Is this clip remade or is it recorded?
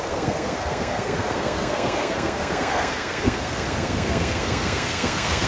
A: remade